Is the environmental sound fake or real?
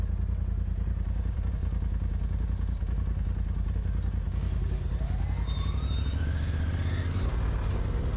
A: real